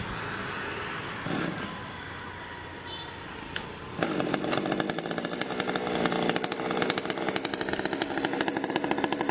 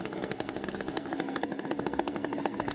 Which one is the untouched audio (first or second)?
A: first